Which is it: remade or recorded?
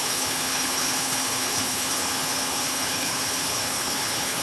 remade